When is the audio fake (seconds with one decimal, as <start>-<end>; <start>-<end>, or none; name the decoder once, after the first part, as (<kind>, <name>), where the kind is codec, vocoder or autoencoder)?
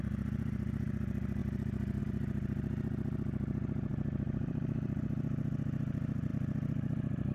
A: 3.9-5.0 (vocoder, BigVGAN v2); 6.3-7.3